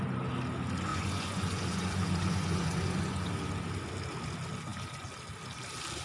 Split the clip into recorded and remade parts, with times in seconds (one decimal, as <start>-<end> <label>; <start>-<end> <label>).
0.0-0.9 recorded; 0.9-3.3 remade; 3.3-6.0 recorded